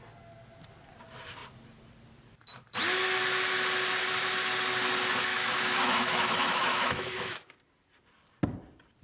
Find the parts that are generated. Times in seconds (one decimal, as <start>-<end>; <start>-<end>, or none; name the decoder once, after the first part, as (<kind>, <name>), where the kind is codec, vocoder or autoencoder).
5.3-7.5 (autoencoder, DAC-VAE)